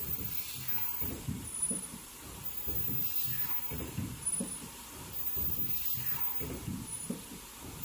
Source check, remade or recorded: remade